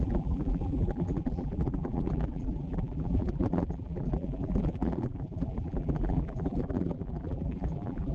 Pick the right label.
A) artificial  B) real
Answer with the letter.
A